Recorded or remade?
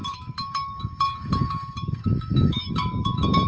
remade